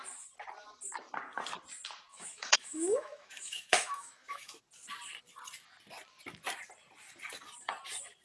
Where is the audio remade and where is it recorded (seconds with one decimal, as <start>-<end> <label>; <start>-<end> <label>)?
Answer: 0.0-2.1 recorded; 2.1-4.6 remade; 4.6-8.2 recorded